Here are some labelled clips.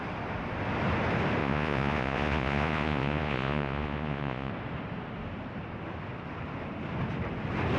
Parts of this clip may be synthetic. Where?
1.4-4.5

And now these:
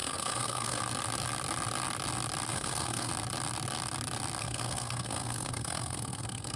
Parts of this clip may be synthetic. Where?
0.0-0.8; 2.5-3.1; 4.4-6.6